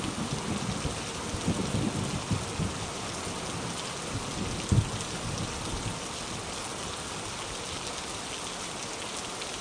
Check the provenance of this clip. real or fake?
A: real